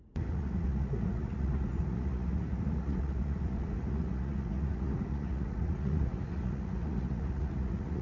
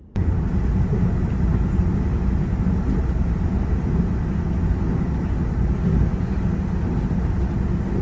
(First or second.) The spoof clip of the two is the first